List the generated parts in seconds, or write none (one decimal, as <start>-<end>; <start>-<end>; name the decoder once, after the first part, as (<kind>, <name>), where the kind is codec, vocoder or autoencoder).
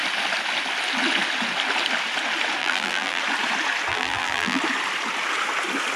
2.6-3.2 (vocoder, BigVGAN v2); 3.9-4.6